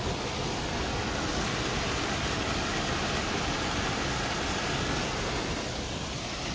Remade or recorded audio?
recorded